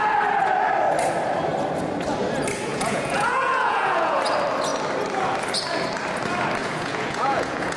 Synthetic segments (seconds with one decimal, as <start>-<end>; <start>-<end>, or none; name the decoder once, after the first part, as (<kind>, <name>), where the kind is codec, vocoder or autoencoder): 2.7-4.2 (vocoder, Vocos); 6.6-7.8